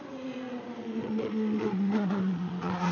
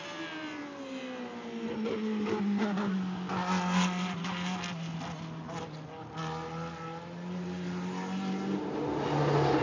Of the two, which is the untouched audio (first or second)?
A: second